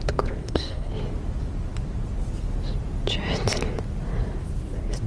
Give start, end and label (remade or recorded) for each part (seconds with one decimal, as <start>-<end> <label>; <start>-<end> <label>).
0.0-0.4 recorded; 0.4-0.9 remade; 0.9-5.1 recorded